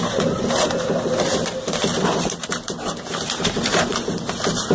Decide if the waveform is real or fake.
fake